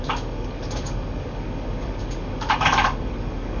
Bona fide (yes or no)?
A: no